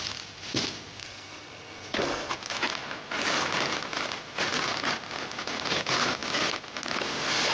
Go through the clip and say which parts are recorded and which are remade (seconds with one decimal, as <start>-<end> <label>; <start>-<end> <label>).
0.0-1.0 recorded; 1.0-2.3 remade; 2.3-7.5 recorded